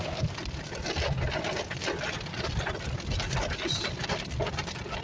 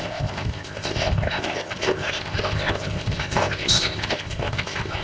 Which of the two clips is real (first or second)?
first